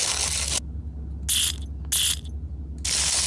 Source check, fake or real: real